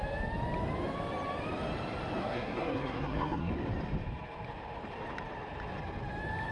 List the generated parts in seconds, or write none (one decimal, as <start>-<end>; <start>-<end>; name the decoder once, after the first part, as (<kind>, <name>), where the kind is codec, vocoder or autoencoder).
2.2-3.5 (codec, SNAC)